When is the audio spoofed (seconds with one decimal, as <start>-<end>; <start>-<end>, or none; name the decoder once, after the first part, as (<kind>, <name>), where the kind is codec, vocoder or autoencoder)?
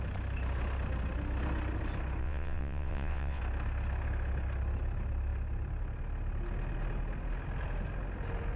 2.2-3.4 (vocoder, WaveNeXt)